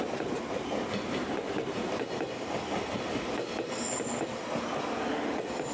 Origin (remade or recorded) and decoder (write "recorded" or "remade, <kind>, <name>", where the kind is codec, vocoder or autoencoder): recorded